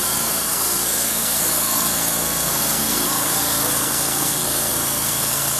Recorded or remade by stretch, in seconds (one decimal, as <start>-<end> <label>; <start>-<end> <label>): 0.0-5.6 remade